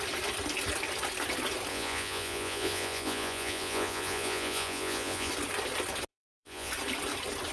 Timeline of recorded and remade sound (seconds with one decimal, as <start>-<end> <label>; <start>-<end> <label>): 0.0-1.7 recorded; 1.7-5.3 remade; 5.3-6.1 recorded; 6.1-6.7 remade; 6.7-7.5 recorded